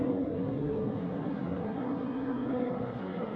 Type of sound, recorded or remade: remade